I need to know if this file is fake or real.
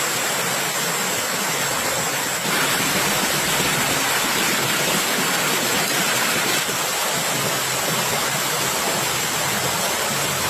real